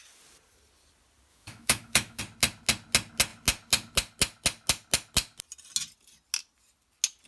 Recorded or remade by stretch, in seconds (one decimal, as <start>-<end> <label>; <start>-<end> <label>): 0.0-1.3 recorded; 1.3-2.2 remade; 2.2-7.3 recorded

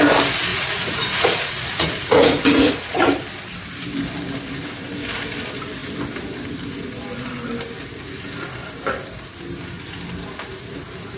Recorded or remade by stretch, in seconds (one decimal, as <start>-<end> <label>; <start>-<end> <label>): 0.0-0.5 recorded; 0.5-3.0 remade; 3.0-11.2 recorded

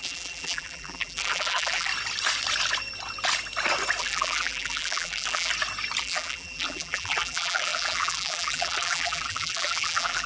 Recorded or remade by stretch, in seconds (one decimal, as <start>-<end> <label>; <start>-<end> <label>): 0.0-1.9 remade; 1.9-4.0 recorded; 4.0-5.5 remade; 5.5-6.0 recorded; 6.0-10.3 remade

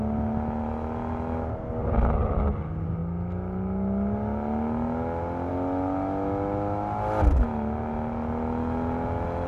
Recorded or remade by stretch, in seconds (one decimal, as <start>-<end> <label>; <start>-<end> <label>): 0.0-9.5 recorded

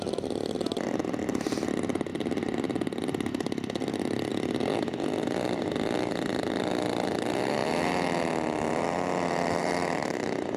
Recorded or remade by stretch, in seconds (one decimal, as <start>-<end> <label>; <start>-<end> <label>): 0.0-4.3 remade; 4.3-5.6 recorded; 5.6-7.6 remade; 7.6-8.7 recorded; 8.7-10.6 remade

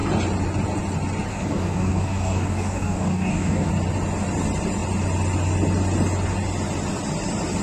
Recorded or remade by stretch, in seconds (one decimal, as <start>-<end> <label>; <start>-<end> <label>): 0.0-1.3 recorded; 1.3-3.7 remade; 3.7-7.6 recorded